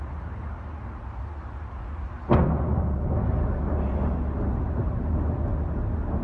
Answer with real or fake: real